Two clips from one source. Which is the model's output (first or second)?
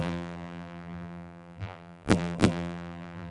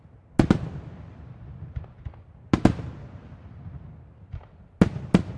first